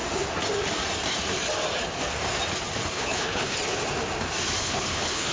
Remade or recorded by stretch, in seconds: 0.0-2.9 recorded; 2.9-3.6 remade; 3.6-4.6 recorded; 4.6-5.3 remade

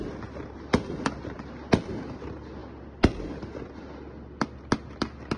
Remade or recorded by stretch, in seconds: 0.0-5.4 recorded

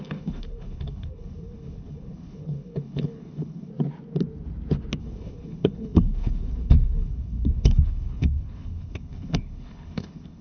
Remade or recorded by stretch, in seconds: 0.0-3.7 remade; 3.7-5.0 recorded; 5.0-10.4 remade

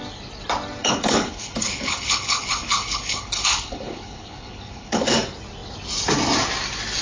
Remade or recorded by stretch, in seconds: 0.0-0.8 recorded; 0.8-5.0 remade; 5.0-7.0 recorded